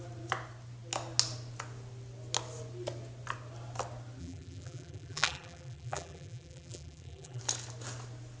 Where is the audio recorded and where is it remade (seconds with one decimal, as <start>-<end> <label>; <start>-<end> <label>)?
0.0-4.2 recorded; 4.2-7.4 remade; 7.4-8.4 recorded